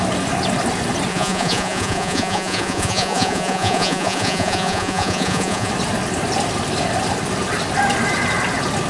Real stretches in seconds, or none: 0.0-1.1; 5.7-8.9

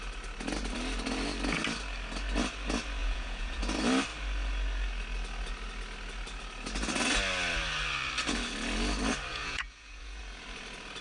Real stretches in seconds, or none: 0.0-3.0; 3.6-9.3; 10.2-11.0

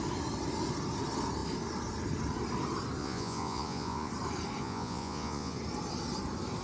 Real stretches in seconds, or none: 0.0-3.0; 4.1-4.6; 5.6-6.6